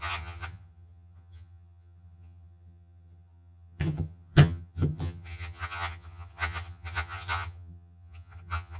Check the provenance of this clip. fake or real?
fake